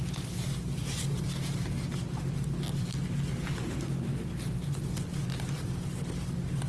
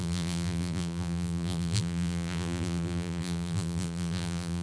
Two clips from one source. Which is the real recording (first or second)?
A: first